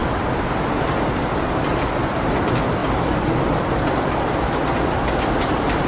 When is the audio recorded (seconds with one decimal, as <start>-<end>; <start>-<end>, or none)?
0.0-5.9